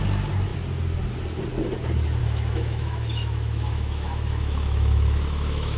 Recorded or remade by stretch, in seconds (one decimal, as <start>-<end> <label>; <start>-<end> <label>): 0.0-2.2 recorded; 2.2-5.8 remade